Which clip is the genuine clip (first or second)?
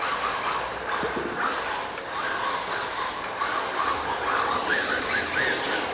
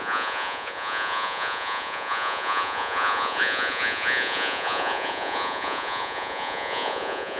first